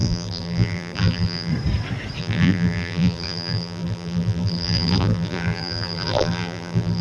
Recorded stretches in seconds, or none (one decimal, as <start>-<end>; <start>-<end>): 1.5-2.2